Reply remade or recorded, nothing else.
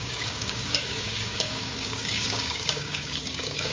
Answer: remade